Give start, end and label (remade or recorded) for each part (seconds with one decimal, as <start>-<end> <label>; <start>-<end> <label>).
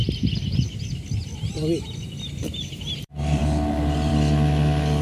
0.0-2.4 recorded; 2.4-4.1 remade; 4.1-5.0 recorded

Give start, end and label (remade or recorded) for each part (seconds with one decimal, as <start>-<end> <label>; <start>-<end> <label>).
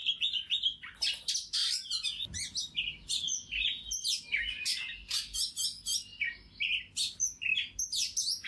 0.0-8.5 recorded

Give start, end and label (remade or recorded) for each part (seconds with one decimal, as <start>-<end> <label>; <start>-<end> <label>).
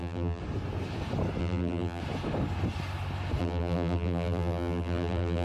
0.0-0.4 remade; 0.4-1.4 recorded; 1.4-2.0 remade; 2.0-3.4 recorded; 3.4-5.4 remade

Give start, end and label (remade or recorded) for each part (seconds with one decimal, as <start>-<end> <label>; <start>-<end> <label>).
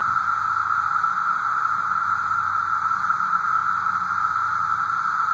0.0-3.6 remade; 3.6-4.3 recorded; 4.3-5.3 remade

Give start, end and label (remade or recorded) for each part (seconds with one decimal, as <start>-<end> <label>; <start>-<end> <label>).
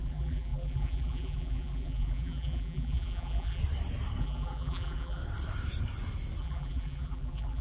0.0-3.6 remade; 3.6-4.2 recorded; 4.2-5.2 remade; 5.2-6.4 recorded; 6.4-7.6 remade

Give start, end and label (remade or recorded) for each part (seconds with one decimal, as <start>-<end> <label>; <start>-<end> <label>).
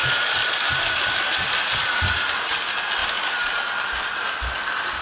0.0-2.5 remade; 2.5-5.0 recorded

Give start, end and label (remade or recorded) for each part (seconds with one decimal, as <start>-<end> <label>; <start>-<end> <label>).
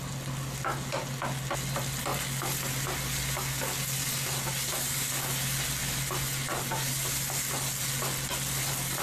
0.0-9.0 recorded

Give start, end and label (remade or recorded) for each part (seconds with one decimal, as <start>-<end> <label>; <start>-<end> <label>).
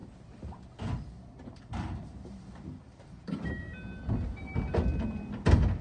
0.0-3.5 remade; 3.5-5.8 recorded